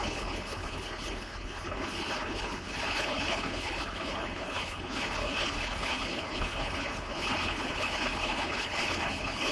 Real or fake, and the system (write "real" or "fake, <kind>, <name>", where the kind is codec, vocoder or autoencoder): fake, codec, HILCodec